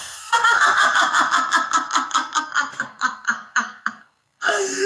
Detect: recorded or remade remade